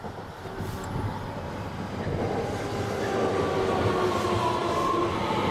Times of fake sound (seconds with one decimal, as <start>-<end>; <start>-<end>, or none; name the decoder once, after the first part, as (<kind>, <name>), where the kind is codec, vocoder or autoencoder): none